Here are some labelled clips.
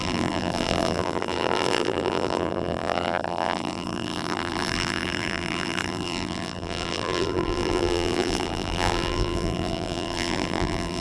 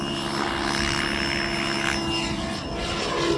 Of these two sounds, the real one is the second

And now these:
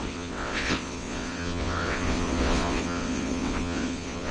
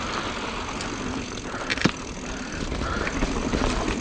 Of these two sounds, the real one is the second